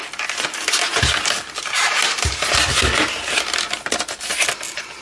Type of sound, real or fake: real